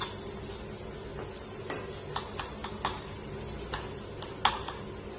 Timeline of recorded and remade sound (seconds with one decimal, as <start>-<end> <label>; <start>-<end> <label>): 0.0-1.1 recorded; 1.1-1.8 remade; 1.8-5.2 recorded